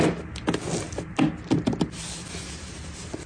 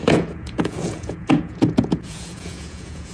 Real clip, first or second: first